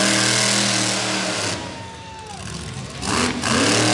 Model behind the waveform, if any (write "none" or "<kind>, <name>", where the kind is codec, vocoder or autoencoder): none